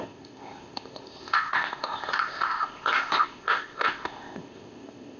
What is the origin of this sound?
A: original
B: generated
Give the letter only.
B